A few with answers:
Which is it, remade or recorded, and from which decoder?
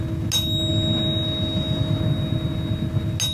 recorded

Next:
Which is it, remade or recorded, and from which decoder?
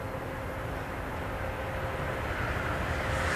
recorded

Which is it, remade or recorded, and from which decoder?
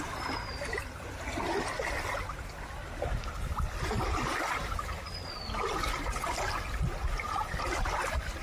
recorded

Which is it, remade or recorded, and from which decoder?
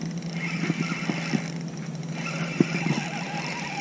recorded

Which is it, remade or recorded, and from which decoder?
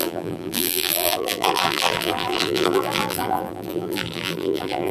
remade, vocoder, BigVGAN v2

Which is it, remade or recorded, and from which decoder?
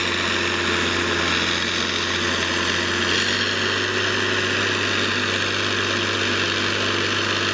recorded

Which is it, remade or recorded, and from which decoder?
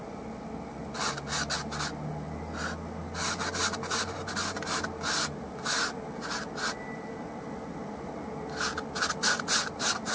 recorded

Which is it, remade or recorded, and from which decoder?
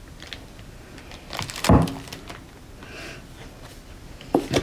recorded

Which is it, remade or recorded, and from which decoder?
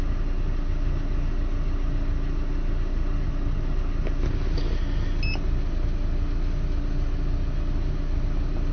recorded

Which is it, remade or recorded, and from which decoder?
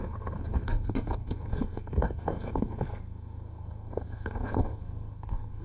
remade, codec, SNAC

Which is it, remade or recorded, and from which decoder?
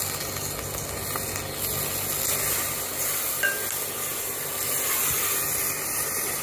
recorded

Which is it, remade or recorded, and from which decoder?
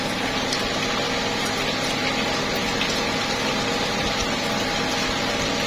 recorded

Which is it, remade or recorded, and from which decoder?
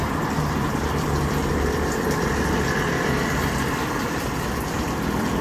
remade, vocoder, BigVGAN v2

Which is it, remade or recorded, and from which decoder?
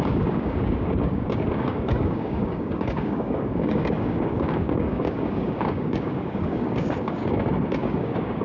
remade, codec, DAC